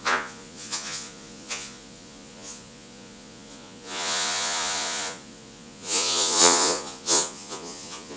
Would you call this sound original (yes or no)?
no